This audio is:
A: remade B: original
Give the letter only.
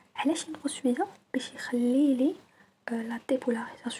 B